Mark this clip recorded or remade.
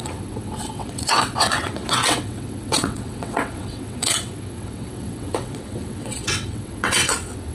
remade